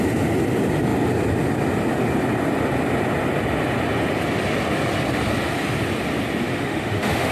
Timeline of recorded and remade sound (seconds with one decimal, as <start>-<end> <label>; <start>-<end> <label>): 0.0-6.5 recorded; 6.5-7.3 remade